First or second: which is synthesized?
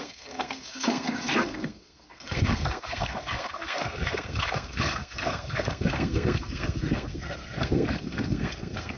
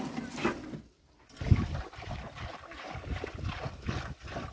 first